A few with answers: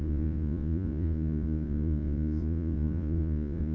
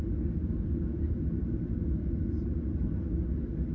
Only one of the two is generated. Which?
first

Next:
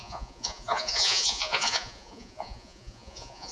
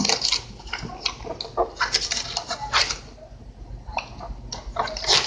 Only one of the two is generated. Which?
first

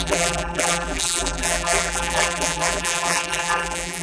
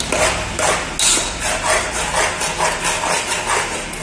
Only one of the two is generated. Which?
first